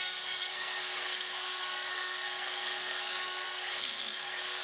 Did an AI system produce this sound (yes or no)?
yes